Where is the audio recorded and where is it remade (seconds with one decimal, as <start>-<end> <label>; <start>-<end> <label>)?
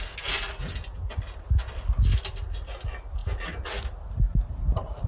0.0-5.1 recorded